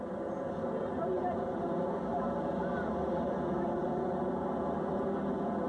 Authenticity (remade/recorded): recorded